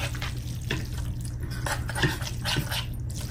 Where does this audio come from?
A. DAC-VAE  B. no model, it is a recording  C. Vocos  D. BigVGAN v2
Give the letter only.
B